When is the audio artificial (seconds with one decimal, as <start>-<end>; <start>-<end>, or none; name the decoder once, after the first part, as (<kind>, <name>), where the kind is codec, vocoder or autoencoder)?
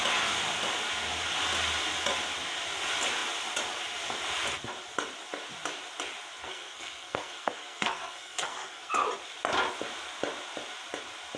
6.4-8.9 (codec, SNAC)